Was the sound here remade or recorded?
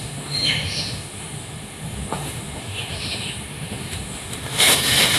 remade